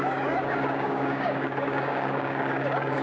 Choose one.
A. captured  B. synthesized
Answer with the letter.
B